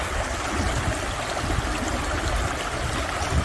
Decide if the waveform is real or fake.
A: real